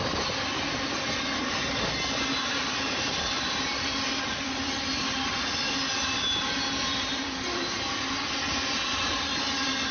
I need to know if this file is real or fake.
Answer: real